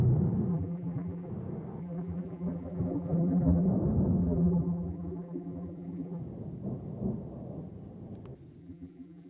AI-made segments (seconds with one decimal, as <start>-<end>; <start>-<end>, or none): 0.5-1.3; 1.8-3.7; 4.2-6.2; 8.6-9.3